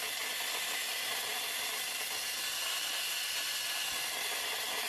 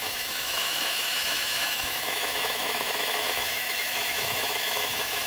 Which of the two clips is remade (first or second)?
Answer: second